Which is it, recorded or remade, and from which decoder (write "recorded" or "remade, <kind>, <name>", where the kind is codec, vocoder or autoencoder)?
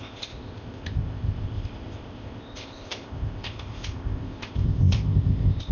remade, codec, ZipCodec